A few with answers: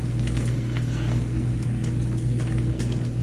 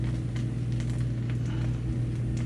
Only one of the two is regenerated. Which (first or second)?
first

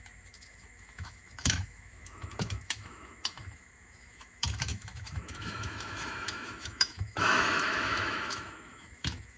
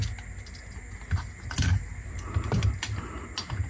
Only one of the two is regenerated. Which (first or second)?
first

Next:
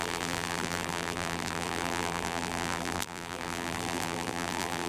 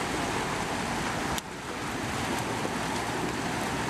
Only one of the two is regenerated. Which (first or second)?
first